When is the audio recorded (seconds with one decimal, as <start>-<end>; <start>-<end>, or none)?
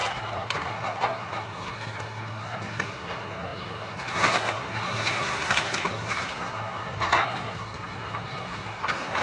none